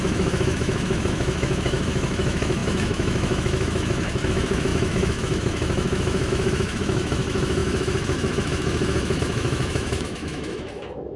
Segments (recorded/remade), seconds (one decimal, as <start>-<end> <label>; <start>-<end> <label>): 0.0-11.2 remade